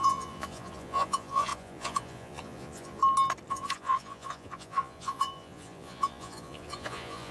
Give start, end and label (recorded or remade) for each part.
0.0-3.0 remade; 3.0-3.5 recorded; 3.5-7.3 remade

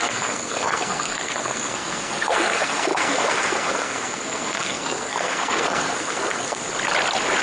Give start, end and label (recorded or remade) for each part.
0.0-6.6 remade; 6.6-7.4 recorded

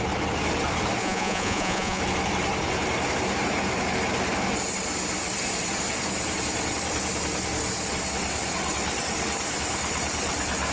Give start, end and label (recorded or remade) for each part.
0.0-1.0 recorded; 1.0-2.0 remade; 2.0-10.7 recorded

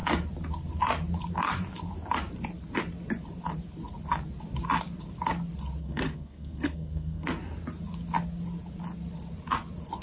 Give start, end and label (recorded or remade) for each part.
0.0-5.8 recorded; 5.8-7.3 remade; 7.3-10.0 recorded

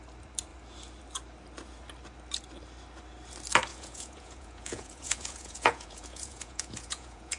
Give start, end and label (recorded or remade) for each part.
0.0-3.7 recorded; 3.7-7.4 remade

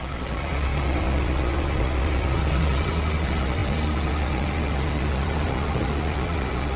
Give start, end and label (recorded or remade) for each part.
0.0-6.8 remade

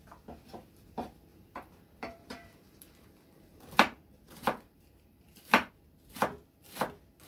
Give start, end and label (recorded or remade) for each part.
0.0-1.3 recorded; 1.3-5.7 remade; 5.7-7.3 recorded

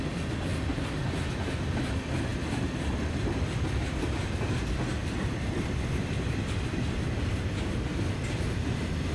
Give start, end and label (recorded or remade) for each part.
0.0-0.5 recorded; 0.5-1.3 remade; 1.3-9.1 recorded